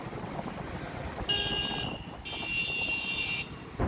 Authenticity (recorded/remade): recorded